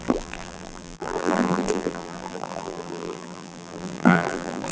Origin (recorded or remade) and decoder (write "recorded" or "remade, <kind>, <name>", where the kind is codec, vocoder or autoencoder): remade, vocoder, BigVGAN v2